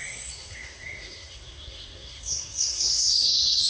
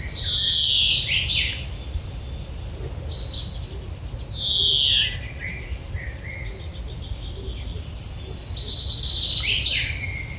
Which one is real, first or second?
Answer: second